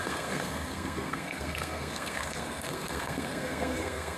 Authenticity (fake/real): fake